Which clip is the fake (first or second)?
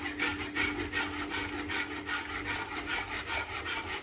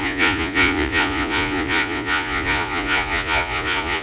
second